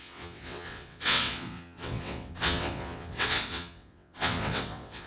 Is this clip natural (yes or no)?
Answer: no